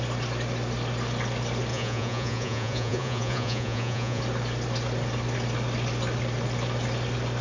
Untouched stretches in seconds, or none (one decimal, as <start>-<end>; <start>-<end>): 0.0-1.7; 4.2-7.4